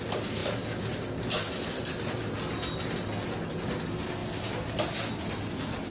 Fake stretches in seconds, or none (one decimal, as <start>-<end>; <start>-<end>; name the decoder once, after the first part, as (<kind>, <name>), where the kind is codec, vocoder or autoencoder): none